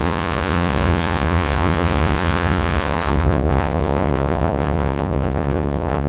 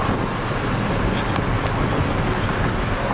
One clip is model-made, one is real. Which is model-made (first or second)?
first